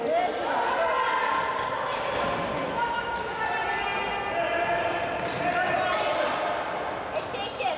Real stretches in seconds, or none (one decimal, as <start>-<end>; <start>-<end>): 0.0-1.2; 1.7-7.8